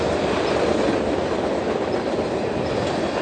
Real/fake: real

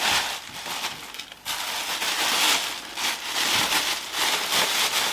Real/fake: real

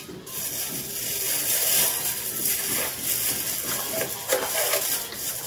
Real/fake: real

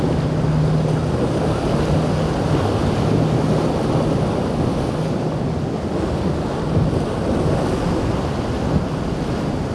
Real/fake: real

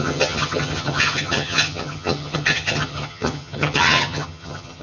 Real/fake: fake